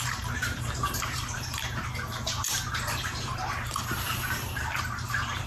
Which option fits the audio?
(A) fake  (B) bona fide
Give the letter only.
A